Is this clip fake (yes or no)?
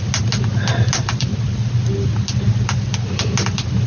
no